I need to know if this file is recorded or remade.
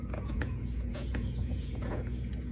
remade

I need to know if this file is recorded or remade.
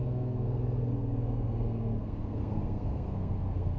remade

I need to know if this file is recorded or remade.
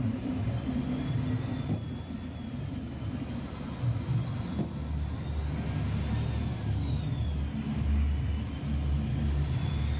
recorded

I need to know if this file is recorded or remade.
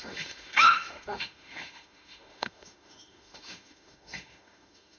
remade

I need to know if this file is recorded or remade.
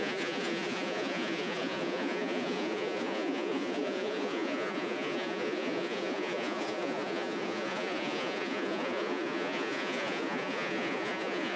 remade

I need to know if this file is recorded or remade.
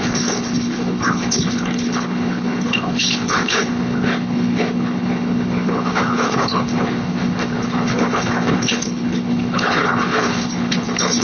remade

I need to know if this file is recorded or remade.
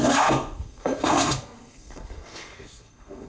remade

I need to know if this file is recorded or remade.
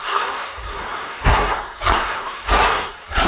remade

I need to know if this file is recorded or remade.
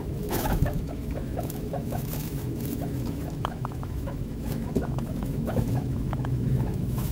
remade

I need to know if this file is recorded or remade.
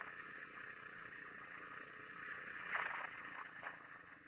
remade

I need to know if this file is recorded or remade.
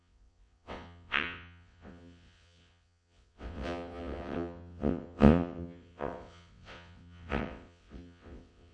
remade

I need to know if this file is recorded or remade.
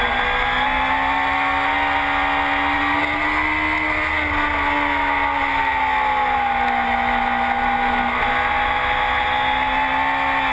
recorded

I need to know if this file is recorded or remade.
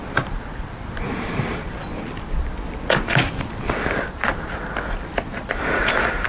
remade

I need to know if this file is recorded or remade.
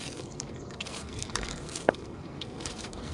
remade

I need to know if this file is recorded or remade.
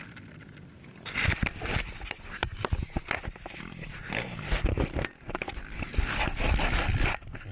recorded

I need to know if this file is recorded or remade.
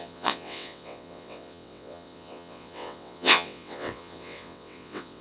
remade